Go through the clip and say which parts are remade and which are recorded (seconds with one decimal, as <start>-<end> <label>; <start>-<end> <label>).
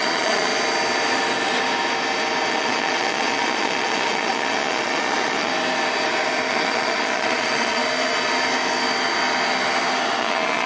0.0-0.5 remade; 0.5-2.5 recorded; 2.5-5.5 remade; 5.5-6.5 recorded; 6.5-7.8 remade; 7.8-10.2 recorded; 10.2-10.7 remade